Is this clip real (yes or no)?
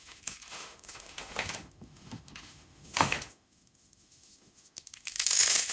no